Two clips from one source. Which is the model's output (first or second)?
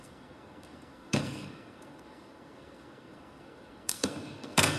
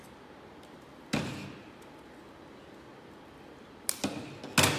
first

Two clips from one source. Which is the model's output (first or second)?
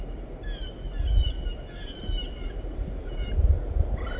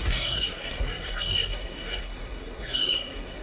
second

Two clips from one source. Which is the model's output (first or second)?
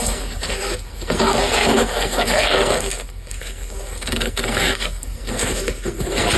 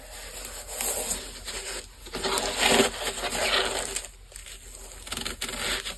first